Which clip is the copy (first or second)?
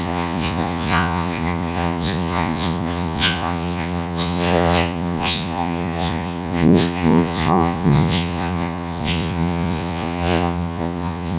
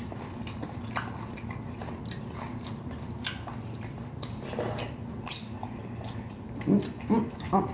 first